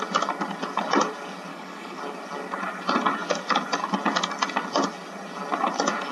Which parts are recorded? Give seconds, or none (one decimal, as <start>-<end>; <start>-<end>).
0.0-1.5; 2.0-6.1